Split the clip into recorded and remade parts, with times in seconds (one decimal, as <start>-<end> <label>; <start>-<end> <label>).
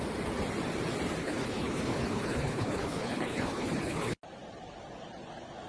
0.0-1.2 recorded; 1.2-4.2 remade; 4.2-5.7 recorded